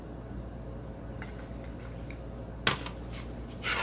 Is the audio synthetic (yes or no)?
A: no